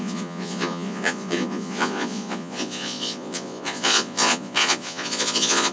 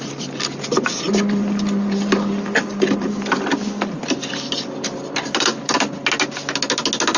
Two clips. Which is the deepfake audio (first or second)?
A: first